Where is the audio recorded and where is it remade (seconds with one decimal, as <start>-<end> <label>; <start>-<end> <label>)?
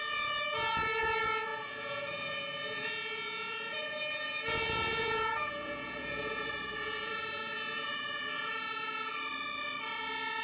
0.0-1.5 recorded; 1.5-4.0 remade; 4.0-4.9 recorded; 4.9-9.1 remade; 9.1-10.4 recorded